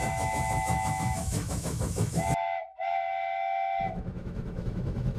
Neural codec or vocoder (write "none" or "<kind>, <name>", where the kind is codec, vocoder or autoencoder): autoencoder, DAC-VAE